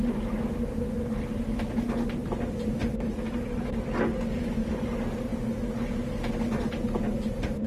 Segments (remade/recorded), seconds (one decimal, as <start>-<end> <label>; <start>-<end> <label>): 0.0-7.7 recorded